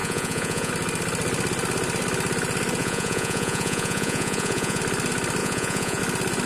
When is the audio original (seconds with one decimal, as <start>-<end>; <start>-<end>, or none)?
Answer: 0.7-2.8; 4.8-5.4; 6.0-6.5